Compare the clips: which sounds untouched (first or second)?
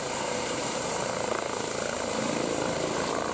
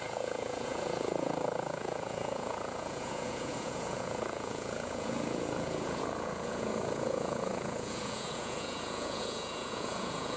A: first